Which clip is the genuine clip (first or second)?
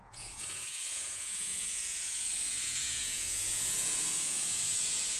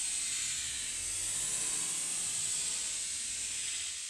second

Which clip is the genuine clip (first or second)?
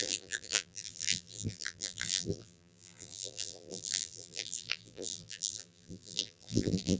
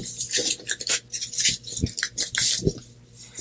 second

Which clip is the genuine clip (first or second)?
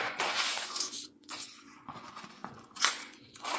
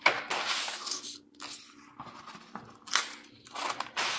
second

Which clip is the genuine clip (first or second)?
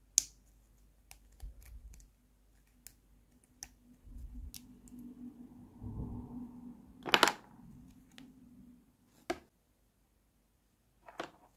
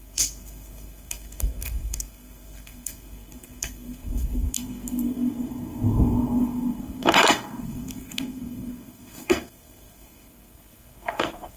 first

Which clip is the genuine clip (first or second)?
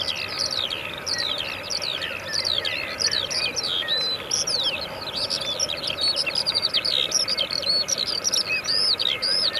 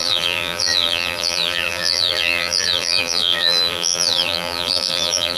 first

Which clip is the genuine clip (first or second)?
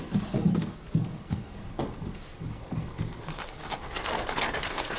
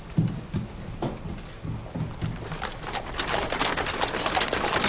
second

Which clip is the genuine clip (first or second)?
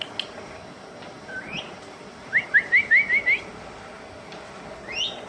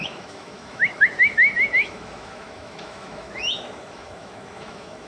first